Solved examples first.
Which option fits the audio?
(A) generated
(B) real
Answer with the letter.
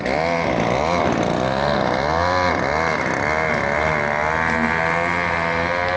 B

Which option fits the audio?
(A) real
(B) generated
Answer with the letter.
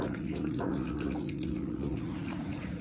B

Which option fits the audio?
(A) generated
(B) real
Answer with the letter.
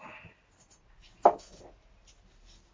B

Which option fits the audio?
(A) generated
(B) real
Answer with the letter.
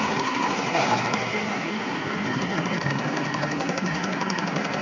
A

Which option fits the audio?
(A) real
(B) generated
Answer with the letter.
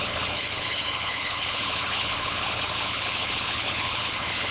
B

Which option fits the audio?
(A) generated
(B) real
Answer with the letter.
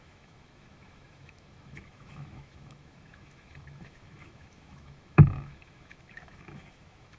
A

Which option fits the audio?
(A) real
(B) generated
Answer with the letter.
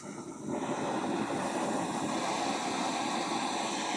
A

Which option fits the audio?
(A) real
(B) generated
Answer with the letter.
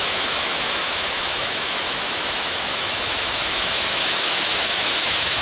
B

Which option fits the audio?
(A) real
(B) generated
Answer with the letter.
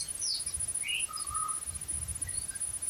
B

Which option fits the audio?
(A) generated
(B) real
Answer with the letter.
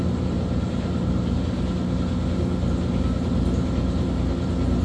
B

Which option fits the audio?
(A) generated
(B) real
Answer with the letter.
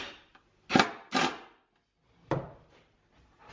B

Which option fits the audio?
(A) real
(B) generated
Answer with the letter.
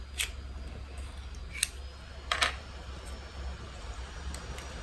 A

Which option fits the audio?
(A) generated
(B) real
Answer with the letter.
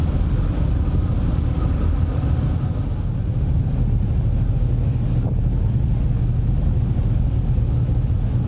B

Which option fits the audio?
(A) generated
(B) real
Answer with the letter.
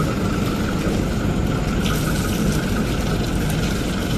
B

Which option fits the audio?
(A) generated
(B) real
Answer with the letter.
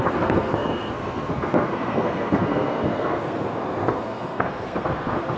A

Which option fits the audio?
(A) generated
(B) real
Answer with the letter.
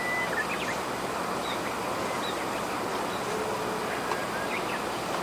B